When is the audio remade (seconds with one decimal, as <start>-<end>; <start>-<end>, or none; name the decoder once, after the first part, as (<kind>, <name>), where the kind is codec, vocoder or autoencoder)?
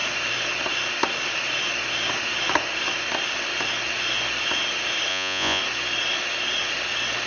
5.1-5.6 (vocoder, Vocos)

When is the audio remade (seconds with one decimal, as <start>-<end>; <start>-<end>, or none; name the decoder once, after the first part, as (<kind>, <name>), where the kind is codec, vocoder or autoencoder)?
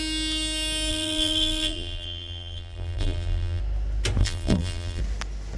0.9-3.6 (vocoder, BigVGAN v2); 4.2-5.0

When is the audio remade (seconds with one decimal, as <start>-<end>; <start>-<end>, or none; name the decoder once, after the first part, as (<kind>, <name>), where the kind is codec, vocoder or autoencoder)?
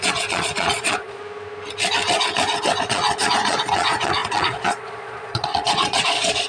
0.0-1.2 (vocoder, Vocos); 2.8-6.5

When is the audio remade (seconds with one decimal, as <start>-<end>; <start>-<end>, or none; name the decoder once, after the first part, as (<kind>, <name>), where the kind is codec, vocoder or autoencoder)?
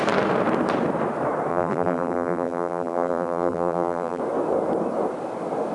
1.5-4.2 (vocoder, BigVGAN v2)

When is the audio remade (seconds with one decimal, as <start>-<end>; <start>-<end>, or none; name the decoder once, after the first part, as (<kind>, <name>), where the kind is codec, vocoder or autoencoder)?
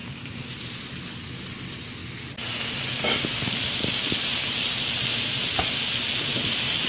0.0-0.9 (vocoder, BigVGAN v2)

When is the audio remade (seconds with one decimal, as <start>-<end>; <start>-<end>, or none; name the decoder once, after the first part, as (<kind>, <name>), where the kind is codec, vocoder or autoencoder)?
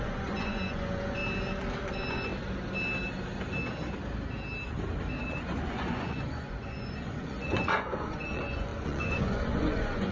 0.0-1.2 (vocoder, Vocos); 1.9-2.3; 5.2-10.1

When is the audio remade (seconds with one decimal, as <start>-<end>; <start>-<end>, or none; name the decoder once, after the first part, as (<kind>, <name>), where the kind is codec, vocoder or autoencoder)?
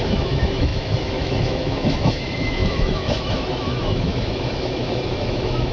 0.0-5.7 (autoencoder, DAC-VAE)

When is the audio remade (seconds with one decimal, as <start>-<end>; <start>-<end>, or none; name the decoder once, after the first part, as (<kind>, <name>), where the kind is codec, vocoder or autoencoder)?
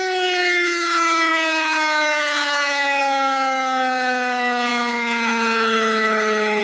0.0-6.6 (codec, HILCodec)